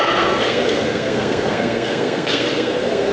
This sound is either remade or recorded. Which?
remade